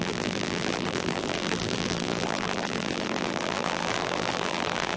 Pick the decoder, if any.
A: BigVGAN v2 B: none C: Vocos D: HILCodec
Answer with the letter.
A